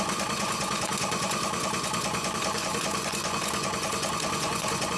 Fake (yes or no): yes